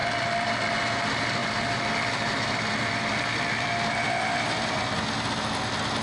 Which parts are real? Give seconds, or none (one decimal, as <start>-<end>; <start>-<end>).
0.7-1.4; 5.0-6.0